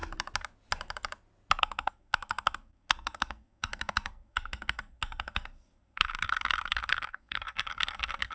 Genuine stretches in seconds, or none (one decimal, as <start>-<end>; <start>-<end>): 0.0-1.6